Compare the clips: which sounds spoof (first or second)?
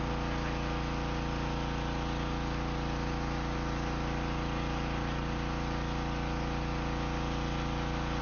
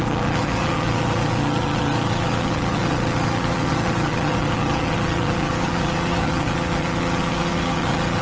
second